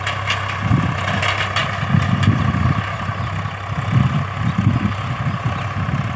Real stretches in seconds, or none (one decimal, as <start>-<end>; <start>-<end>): 0.0-6.2